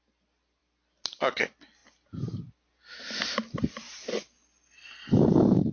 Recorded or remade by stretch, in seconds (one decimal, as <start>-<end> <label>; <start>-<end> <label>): 0.0-5.7 recorded